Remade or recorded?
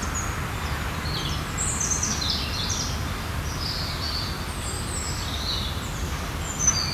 recorded